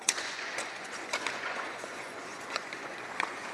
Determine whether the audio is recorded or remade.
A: remade